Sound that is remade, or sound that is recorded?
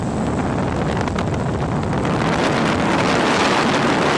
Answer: recorded